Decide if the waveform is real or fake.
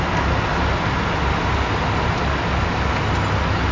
real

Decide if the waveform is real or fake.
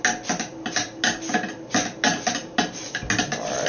real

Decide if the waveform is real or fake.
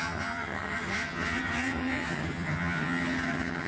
fake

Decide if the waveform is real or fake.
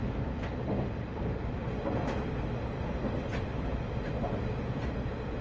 real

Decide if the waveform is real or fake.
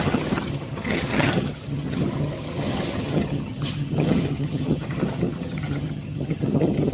fake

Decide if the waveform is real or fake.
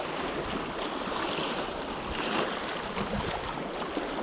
real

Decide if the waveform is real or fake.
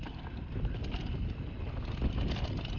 real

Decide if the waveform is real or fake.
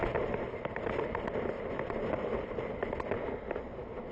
real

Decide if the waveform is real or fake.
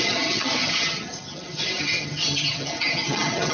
fake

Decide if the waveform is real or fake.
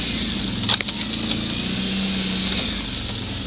real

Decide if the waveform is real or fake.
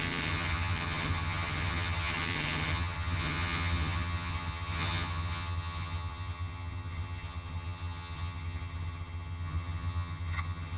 fake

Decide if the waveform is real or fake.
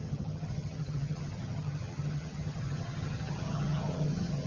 fake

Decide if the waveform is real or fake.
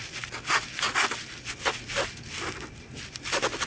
real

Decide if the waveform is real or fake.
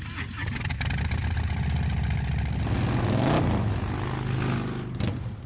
real